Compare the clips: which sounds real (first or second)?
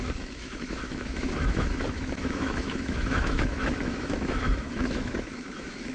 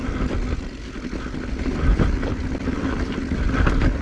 second